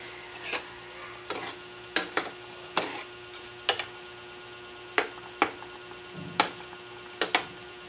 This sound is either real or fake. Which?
real